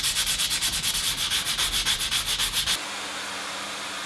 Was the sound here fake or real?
real